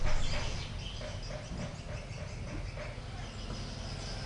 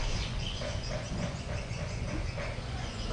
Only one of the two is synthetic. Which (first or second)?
second